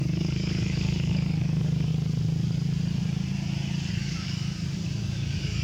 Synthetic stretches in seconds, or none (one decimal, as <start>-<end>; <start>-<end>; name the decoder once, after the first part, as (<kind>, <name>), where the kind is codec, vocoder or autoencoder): 0.0-1.9 (codec, DAC); 3.9-5.6